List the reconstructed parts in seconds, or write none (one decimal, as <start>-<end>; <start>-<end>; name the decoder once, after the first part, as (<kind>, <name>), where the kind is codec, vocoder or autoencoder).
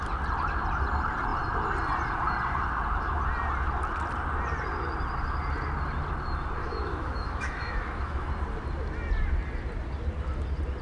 6.6-8.3 (autoencoder, DAC-VAE)